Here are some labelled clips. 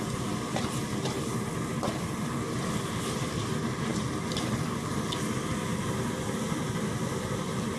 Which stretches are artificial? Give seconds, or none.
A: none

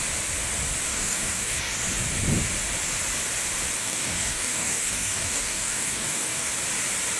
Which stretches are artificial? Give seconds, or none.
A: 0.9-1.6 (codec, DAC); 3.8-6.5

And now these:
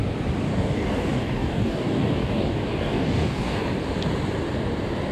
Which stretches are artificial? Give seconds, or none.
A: 0.5-3.6 (codec, DAC)

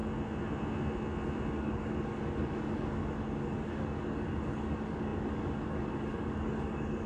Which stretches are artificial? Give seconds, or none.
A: 1.5-7.1 (codec, DAC)

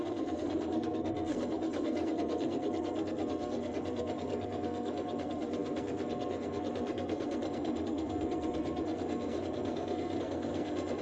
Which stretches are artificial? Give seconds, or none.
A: 0.0-11.0 (codec, SNAC)

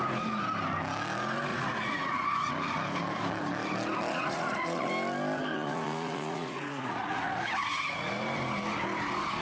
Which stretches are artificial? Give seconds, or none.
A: 1.5-2.5 (vocoder, Vocos); 4.1-4.9; 5.5-8.1